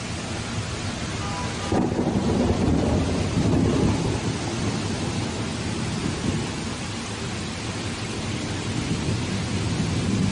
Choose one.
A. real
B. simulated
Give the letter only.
A